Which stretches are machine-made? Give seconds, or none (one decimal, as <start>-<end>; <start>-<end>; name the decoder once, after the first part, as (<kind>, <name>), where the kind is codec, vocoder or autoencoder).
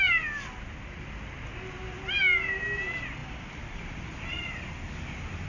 none